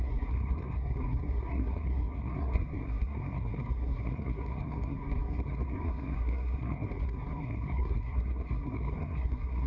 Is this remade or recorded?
remade